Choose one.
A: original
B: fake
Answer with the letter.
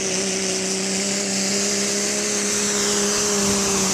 A